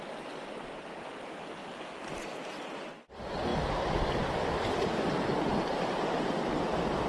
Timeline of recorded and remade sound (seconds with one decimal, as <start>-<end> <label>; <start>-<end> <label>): 0.0-7.1 recorded